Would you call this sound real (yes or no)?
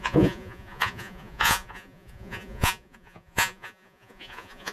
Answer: no